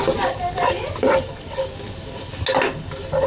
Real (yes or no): yes